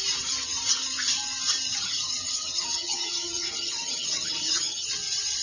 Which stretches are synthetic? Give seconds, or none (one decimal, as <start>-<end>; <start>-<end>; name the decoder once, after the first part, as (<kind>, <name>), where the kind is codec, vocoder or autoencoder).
1.7-4.9 (vocoder, HiFi-GAN)

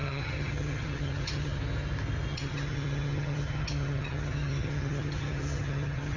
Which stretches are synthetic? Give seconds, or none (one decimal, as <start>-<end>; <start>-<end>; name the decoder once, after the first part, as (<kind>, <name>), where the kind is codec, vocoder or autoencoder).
0.0-1.6 (vocoder, HiFi-GAN); 2.3-6.2

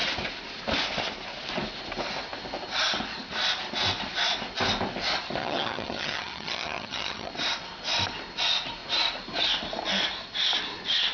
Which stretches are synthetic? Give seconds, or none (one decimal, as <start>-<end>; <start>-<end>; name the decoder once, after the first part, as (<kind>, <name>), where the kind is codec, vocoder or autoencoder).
5.4-7.3 (vocoder, HiFi-GAN)

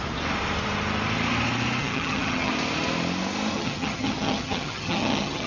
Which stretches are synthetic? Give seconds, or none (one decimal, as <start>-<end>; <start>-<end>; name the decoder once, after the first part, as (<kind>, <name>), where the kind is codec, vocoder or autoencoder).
1.8-2.5 (vocoder, HiFi-GAN); 3.5-5.5

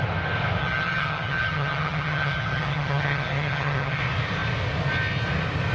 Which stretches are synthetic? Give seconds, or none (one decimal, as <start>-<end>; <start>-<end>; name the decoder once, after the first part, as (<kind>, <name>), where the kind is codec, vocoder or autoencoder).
0.6-4.0 (vocoder, HiFi-GAN)

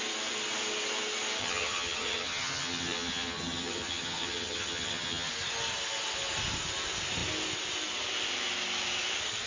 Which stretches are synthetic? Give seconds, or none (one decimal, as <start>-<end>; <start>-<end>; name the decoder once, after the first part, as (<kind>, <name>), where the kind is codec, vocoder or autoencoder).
1.4-5.3 (vocoder, HiFi-GAN)

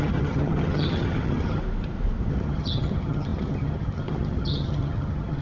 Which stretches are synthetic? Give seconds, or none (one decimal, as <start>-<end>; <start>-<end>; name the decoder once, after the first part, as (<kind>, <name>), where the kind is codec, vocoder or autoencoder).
0.0-1.6 (vocoder, HiFi-GAN); 2.3-5.4